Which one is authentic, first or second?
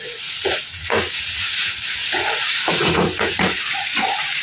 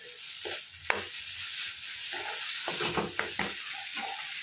second